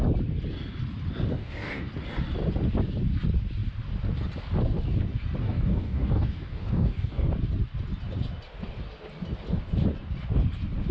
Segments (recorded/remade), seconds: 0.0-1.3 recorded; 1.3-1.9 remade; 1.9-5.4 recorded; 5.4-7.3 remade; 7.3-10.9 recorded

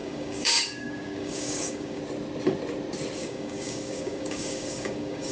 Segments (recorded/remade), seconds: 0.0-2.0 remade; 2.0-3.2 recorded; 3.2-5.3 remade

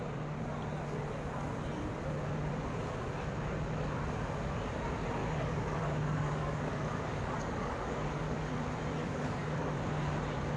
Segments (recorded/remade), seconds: 0.0-5.2 recorded; 5.2-8.5 remade; 8.5-9.0 recorded; 9.0-9.8 remade; 9.8-10.6 recorded